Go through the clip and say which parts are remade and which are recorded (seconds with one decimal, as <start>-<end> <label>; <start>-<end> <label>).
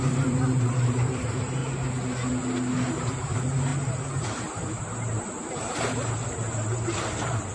0.0-1.6 remade; 1.6-2.9 recorded; 2.9-7.5 remade